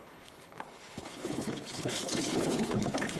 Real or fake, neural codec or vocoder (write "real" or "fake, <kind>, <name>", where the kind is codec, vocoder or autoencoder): fake, codec, HILCodec